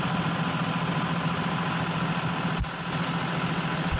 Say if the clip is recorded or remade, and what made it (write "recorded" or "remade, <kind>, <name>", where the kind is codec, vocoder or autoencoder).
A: recorded